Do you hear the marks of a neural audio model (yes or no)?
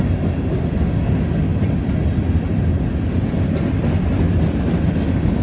no